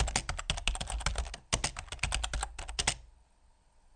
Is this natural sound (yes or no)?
yes